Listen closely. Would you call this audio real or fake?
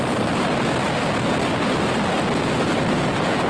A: real